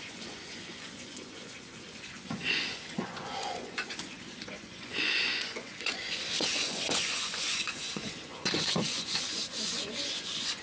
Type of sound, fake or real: fake